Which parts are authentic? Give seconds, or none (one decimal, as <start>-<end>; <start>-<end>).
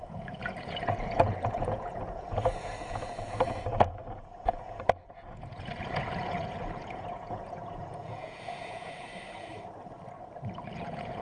9.1-10.7